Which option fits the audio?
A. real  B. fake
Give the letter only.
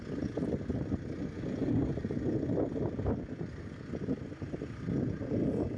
A